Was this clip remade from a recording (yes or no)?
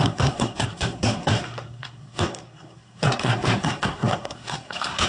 yes